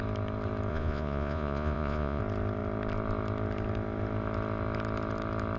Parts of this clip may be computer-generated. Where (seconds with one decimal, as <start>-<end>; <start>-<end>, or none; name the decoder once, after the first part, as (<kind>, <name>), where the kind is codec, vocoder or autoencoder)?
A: 0.7-2.2 (vocoder, Vocos)